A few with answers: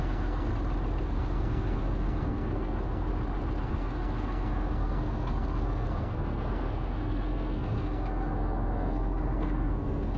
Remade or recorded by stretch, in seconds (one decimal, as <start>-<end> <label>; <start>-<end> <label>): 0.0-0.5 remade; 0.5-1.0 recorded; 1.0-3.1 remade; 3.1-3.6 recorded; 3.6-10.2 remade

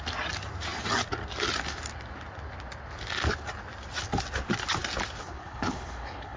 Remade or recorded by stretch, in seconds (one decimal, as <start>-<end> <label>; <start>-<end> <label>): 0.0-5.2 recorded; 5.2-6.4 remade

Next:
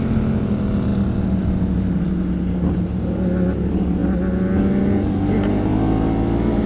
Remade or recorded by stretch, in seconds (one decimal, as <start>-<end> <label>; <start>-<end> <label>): 0.0-6.7 recorded

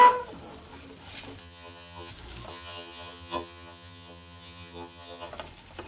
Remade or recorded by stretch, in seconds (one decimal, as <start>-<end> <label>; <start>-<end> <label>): 0.0-1.4 recorded; 1.4-2.1 remade; 2.1-2.5 recorded; 2.5-5.3 remade; 5.3-5.9 recorded

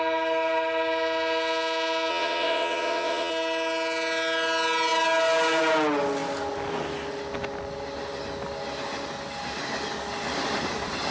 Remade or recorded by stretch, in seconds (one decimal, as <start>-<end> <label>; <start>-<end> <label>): 0.0-2.1 recorded; 2.1-3.3 remade; 3.3-11.1 recorded